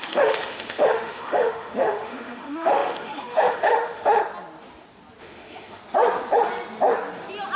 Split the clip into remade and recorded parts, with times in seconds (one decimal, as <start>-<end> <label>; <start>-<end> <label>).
0.0-4.2 remade; 4.2-5.2 recorded; 5.2-5.8 remade; 5.8-7.6 recorded